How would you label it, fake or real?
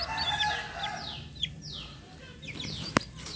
real